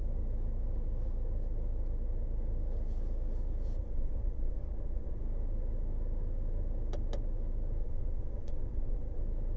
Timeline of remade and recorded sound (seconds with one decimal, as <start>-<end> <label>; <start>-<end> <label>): 0.0-3.8 recorded; 3.8-5.2 remade; 5.2-7.8 recorded; 7.8-9.2 remade; 9.2-9.6 recorded